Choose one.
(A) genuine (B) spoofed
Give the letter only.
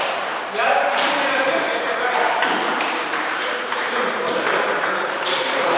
B